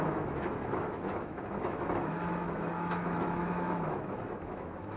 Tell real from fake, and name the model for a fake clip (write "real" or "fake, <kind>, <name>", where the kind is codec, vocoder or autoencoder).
fake, autoencoder, DAC-VAE